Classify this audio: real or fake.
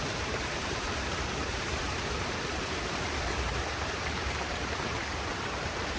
fake